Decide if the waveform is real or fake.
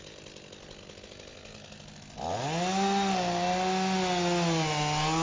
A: real